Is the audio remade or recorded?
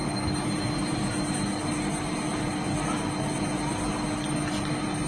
recorded